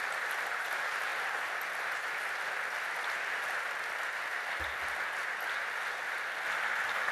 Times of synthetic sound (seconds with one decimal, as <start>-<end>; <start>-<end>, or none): none